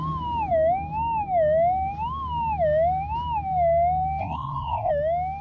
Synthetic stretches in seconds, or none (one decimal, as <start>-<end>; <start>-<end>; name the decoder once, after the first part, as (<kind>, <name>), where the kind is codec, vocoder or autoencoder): 4.2-4.9 (codec, SNAC)